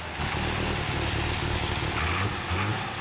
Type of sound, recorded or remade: recorded